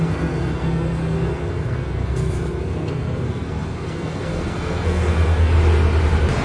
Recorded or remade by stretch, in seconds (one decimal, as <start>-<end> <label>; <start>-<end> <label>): 0.0-5.5 remade; 5.5-6.4 recorded